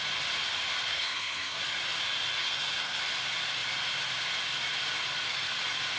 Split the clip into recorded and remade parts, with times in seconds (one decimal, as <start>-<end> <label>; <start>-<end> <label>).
0.0-0.9 recorded; 0.9-1.6 remade; 1.6-2.4 recorded; 2.4-3.0 remade; 3.0-6.0 recorded